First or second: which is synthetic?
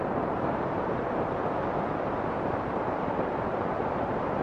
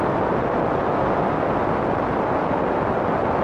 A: first